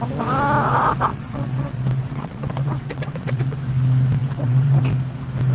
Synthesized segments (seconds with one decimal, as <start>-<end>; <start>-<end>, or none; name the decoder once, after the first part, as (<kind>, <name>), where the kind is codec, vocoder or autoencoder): 1.1-3.6 (vocoder, WaveNeXt); 4.2-4.8